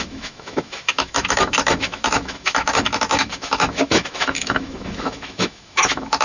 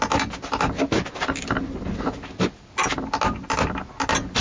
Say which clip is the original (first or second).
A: second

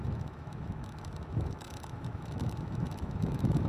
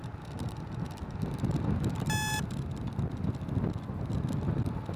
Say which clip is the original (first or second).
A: second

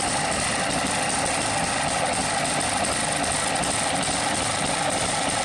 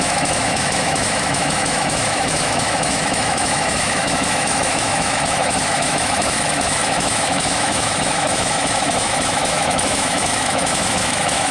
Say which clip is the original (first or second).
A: first